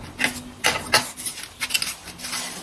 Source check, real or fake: real